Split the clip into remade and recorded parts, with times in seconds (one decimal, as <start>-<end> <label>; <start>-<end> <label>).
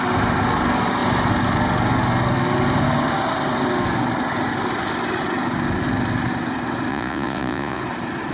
0.0-6.9 recorded; 6.9-7.8 remade; 7.8-8.3 recorded